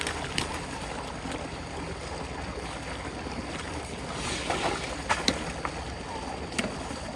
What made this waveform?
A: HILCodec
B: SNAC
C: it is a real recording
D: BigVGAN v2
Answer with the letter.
C